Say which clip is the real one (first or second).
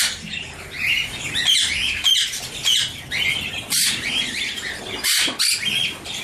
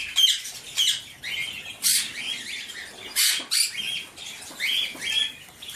second